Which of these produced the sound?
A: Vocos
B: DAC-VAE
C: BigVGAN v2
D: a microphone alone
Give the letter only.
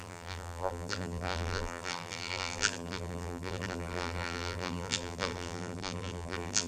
C